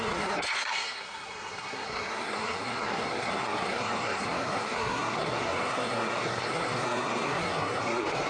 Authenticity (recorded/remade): remade